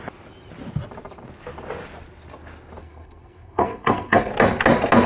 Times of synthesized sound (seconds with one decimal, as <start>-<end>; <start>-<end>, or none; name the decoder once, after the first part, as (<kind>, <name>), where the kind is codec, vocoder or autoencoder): 2.8-4.3 (codec, SNAC)